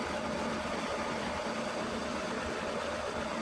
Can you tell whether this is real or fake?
real